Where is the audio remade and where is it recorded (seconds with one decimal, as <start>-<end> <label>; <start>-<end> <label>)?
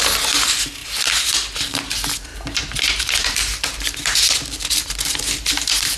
0.0-0.8 recorded; 0.8-1.8 remade; 1.8-2.3 recorded; 2.3-6.0 remade